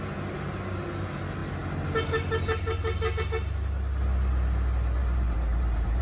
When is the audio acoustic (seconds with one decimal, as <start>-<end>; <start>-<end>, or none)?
0.0-5.0